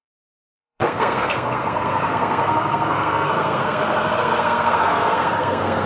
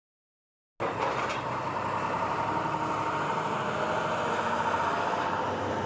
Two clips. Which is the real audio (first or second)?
second